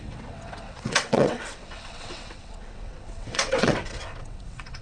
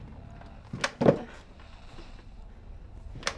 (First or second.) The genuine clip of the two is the second